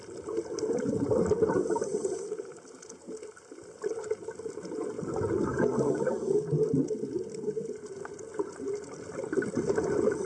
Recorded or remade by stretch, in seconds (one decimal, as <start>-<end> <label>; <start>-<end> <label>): 0.0-10.3 recorded

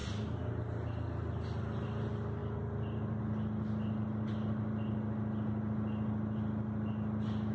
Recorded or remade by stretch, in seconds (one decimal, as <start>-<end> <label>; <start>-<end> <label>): 0.0-7.5 recorded

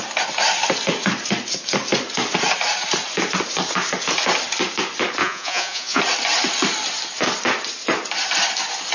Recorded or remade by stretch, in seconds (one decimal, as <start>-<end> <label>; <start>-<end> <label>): 0.0-5.2 recorded; 5.2-6.0 remade; 6.0-8.9 recorded

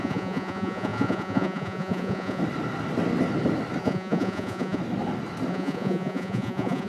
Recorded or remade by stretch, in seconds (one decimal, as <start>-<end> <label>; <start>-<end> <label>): 0.0-2.4 remade; 2.4-3.8 recorded; 3.8-4.8 remade; 4.8-5.5 recorded; 5.5-6.9 remade

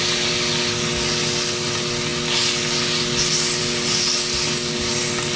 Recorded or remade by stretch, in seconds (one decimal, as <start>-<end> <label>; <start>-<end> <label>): 0.0-5.4 recorded

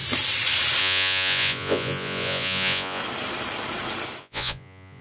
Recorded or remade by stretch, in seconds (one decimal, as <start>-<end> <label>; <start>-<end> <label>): 0.0-0.8 recorded; 0.8-3.0 remade; 3.0-4.2 recorded; 4.2-5.0 remade

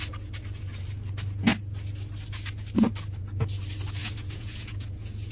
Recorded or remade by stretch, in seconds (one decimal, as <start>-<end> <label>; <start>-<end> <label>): 0.0-4.0 recorded; 4.0-5.3 remade